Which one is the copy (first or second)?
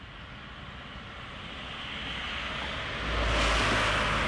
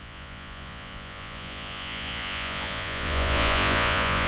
second